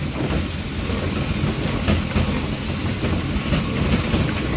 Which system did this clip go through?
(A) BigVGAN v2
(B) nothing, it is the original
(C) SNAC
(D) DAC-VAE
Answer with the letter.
B